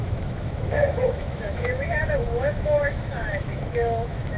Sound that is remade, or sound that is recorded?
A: remade